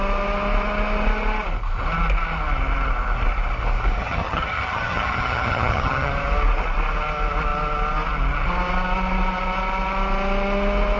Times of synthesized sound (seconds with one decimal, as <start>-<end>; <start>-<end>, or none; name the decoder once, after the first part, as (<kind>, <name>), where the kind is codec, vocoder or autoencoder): 4.0-6.1 (vocoder, HiFi-GAN)